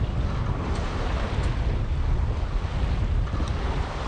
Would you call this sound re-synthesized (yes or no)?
no